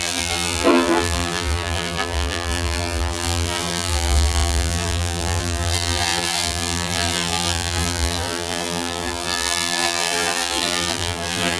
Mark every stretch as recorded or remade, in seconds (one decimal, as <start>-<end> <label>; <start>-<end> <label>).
0.0-11.6 remade